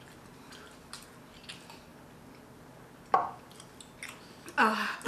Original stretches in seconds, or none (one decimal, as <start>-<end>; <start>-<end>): 0.0-5.1